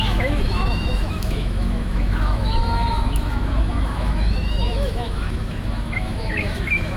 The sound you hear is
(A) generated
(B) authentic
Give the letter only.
A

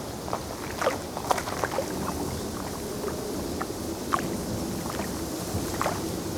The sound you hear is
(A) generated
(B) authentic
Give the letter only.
B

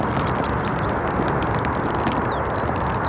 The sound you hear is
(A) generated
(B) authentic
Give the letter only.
B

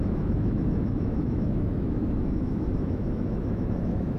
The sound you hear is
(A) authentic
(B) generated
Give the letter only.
B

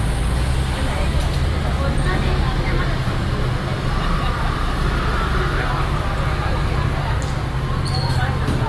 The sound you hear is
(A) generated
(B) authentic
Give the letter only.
B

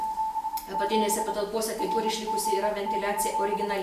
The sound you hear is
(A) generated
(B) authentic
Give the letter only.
B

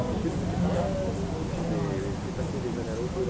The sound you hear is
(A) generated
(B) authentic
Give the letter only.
B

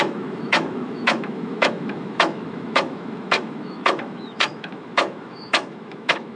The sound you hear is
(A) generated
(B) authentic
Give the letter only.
A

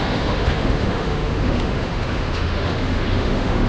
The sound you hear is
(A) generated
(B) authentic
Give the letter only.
A